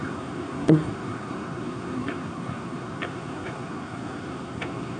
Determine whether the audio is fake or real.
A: fake